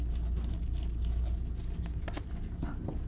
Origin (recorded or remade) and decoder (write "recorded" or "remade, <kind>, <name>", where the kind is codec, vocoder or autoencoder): recorded